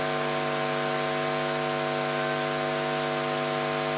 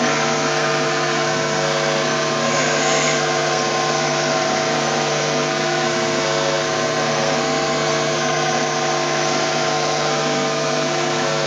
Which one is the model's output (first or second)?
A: second